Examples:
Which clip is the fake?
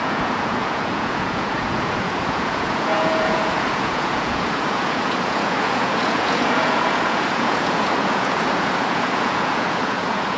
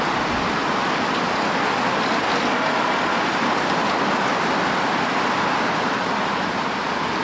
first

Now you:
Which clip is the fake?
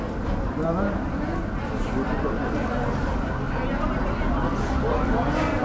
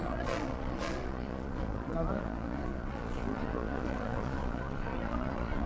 second